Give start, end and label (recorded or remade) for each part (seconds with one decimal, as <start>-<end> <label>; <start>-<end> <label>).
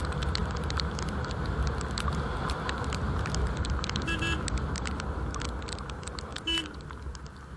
0.0-7.6 recorded